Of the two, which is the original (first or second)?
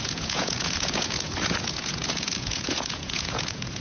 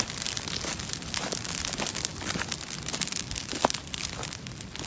second